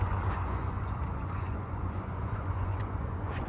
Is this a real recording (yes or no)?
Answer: no